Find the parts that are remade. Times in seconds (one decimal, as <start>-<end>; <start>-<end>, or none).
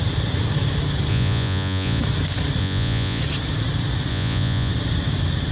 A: 1.1-2.0; 2.6-3.2; 4.1-4.7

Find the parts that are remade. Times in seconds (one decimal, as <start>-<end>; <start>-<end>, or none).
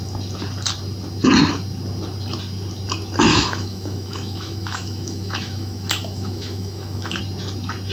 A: 3.3-7.2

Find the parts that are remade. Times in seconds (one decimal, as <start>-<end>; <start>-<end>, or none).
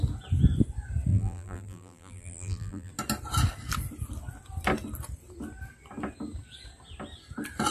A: 1.1-2.9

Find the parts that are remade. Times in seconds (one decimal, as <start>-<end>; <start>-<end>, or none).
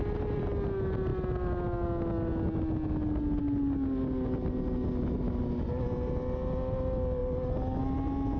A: none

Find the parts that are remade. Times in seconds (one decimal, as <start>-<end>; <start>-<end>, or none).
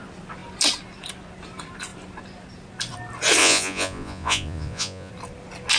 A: 3.4-5.1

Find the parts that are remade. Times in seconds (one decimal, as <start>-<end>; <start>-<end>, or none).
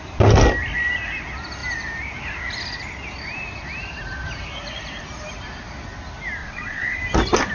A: 6.4-7.0